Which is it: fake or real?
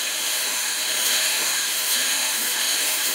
fake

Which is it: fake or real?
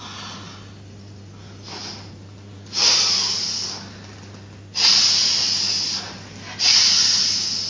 real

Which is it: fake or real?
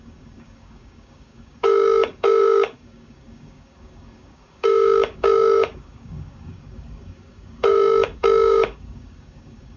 fake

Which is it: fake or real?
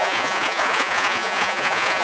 fake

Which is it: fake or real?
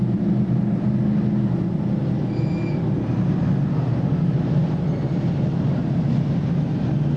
real